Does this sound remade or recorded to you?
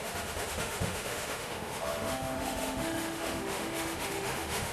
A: remade